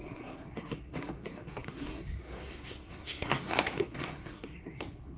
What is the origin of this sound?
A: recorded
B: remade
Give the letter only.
B